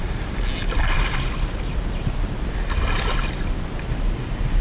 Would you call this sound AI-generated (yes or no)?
no